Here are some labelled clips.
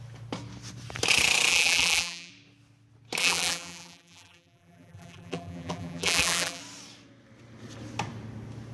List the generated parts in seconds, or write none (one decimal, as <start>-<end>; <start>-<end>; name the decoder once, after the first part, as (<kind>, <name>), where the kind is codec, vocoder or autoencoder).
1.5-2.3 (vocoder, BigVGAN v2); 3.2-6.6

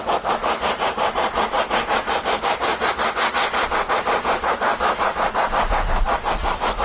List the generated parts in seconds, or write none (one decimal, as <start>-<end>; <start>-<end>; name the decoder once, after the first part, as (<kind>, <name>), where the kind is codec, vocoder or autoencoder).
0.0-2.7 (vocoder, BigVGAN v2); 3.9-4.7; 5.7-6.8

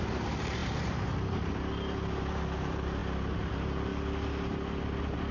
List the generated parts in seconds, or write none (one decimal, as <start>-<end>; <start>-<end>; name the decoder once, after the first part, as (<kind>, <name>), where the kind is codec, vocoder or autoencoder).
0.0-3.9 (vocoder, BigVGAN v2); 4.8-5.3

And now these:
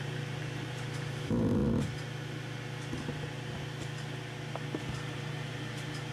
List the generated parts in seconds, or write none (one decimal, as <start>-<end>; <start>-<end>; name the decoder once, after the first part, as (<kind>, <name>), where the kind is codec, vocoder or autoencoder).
0.0-1.6 (vocoder, BigVGAN v2); 4.8-6.1